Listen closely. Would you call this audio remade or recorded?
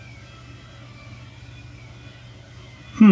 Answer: recorded